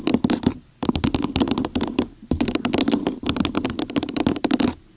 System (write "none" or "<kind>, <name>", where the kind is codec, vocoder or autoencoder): none